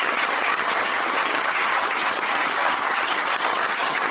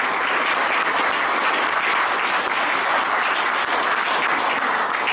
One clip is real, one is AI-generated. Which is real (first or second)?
second